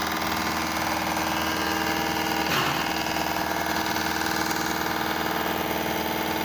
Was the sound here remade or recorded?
recorded